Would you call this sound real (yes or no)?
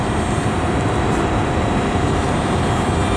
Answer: yes